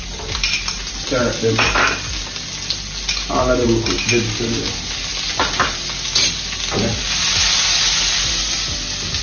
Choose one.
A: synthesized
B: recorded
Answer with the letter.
B